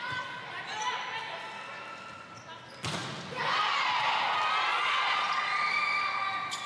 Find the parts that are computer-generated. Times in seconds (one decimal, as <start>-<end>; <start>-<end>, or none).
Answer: 4.7-5.7